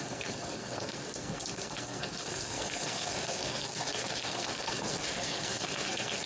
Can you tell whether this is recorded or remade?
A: remade